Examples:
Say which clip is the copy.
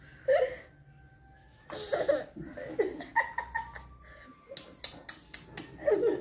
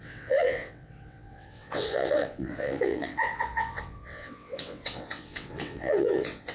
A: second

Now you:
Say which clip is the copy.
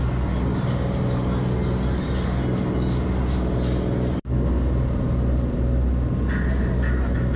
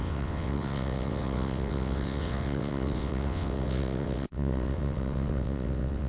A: second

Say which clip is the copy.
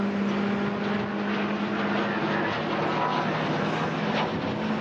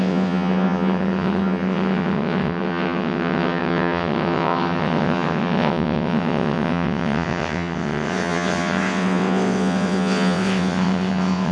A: second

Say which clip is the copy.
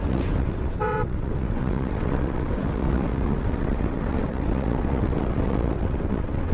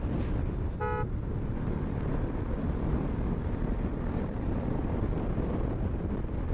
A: first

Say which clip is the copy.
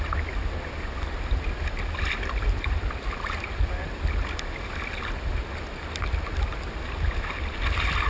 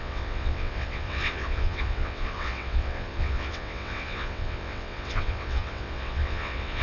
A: second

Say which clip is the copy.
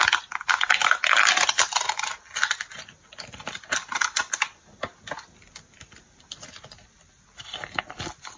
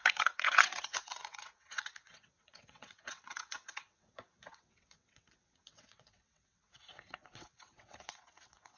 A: second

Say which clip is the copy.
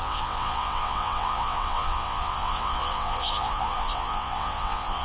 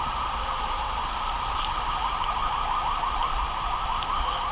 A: first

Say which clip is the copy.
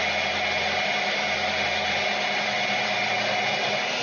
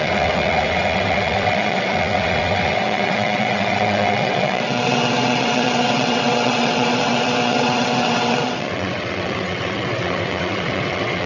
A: second